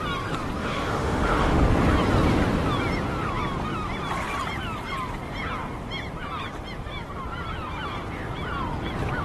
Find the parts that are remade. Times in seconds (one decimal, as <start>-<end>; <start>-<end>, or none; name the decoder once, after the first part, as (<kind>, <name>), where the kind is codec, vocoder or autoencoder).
0.6-1.6 (autoencoder, DAC-VAE)